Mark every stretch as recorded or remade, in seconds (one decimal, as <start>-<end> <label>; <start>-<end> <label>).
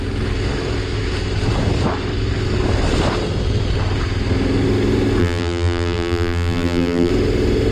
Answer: 0.0-5.2 recorded; 5.2-7.1 remade; 7.1-7.7 recorded